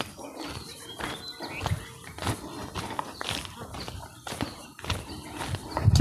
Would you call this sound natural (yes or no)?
yes